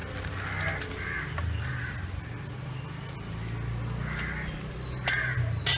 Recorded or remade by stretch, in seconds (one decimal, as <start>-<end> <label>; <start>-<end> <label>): 0.0-5.8 recorded